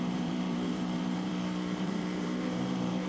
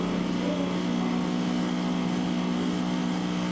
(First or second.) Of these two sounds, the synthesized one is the first